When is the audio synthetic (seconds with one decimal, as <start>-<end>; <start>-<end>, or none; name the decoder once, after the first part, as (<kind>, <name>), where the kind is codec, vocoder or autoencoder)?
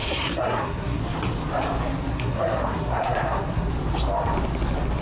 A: 0.0-1.0 (codec, SNAC); 2.1-3.7